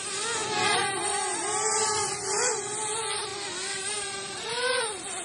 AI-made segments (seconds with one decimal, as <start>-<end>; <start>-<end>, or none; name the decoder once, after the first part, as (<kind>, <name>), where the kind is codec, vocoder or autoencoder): none